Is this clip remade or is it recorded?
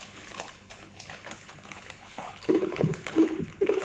remade